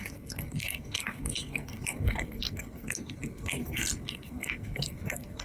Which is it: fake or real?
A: fake